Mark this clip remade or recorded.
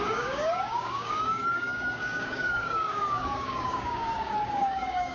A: remade